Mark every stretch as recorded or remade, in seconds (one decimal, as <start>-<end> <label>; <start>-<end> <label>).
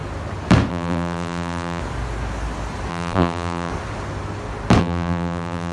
0.0-0.7 recorded; 0.7-1.8 remade; 1.8-2.9 recorded; 2.9-3.7 remade; 3.7-4.8 recorded; 4.8-5.7 remade